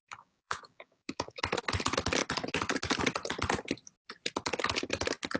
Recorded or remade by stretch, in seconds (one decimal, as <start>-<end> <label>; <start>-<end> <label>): 0.0-1.4 remade; 1.4-5.4 recorded